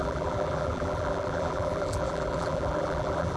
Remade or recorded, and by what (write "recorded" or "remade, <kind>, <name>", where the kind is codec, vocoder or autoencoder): remade, vocoder, BigVGAN v2